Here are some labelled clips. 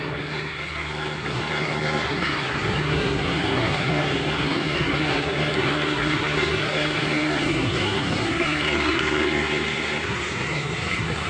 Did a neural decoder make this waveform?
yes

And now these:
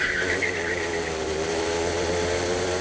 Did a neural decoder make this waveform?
yes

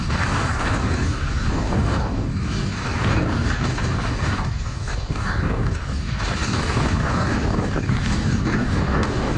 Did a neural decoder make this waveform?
yes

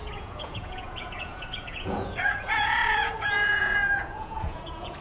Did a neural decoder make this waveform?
yes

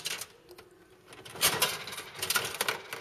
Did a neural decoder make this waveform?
no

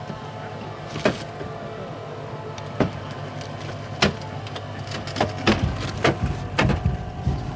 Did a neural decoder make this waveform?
no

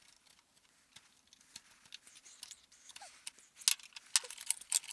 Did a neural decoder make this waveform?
no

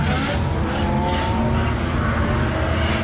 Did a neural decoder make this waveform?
no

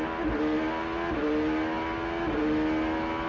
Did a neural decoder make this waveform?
no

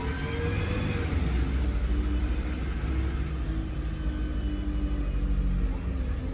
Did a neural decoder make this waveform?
no